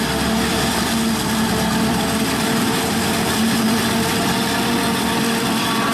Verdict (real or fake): fake